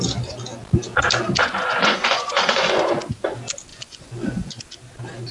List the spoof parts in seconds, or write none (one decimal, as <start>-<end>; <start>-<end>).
1.4-3.0; 3.7-4.5